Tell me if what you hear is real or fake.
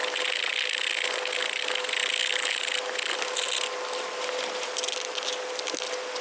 real